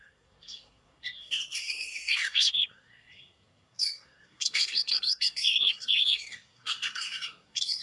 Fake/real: fake